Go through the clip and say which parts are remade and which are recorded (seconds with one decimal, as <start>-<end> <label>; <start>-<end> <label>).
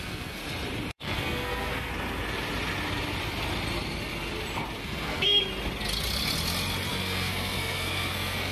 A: 0.0-0.4 remade; 0.4-0.9 recorded; 0.9-1.9 remade; 1.9-4.8 recorded; 4.8-5.4 remade; 5.4-6.9 recorded; 6.9-8.5 remade